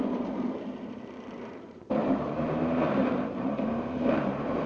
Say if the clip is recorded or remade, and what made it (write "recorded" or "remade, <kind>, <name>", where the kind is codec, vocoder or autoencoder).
remade, vocoder, BigVGAN v2